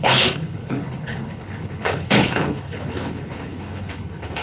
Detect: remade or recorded remade